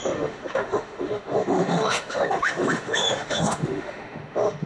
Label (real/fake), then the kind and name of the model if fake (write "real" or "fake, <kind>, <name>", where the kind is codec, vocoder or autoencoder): fake, autoencoder, DAC-VAE